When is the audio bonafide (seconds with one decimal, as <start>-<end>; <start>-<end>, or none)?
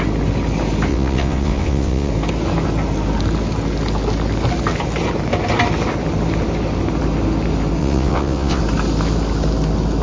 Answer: 0.0-0.9; 2.1-7.8; 8.6-10.0